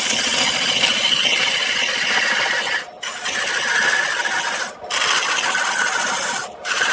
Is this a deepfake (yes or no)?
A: no